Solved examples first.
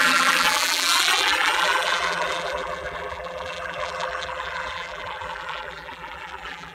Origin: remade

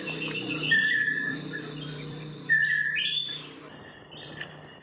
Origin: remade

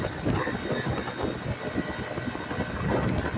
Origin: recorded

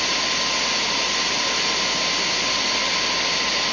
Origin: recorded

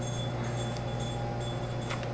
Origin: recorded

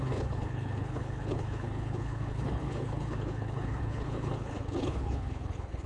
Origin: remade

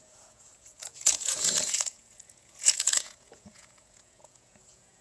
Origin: remade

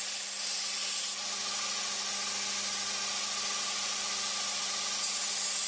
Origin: recorded